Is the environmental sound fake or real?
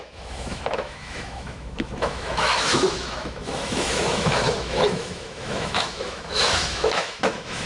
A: fake